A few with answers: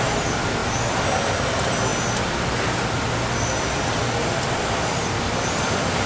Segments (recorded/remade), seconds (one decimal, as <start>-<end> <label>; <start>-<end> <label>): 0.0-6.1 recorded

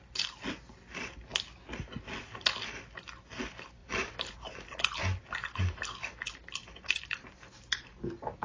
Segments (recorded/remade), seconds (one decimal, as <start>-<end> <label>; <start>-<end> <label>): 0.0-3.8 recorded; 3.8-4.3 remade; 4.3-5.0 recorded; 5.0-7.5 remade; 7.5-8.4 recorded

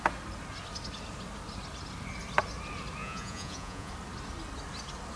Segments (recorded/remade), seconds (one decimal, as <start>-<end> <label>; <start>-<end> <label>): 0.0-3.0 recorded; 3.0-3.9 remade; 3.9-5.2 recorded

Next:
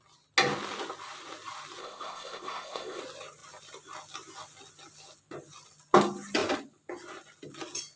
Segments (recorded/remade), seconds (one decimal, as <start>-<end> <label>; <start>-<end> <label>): 0.0-1.8 recorded; 1.8-3.0 remade; 3.0-8.0 recorded

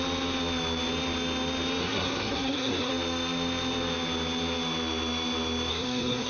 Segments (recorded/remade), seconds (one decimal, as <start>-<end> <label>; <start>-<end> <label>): 0.0-1.8 recorded; 1.8-2.9 remade; 2.9-5.7 recorded; 5.7-6.3 remade

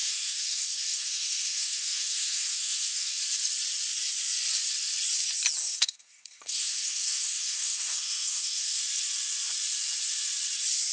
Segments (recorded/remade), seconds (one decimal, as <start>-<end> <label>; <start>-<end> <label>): 0.0-3.2 remade; 3.2-5.6 recorded; 5.6-8.8 remade; 8.8-10.9 recorded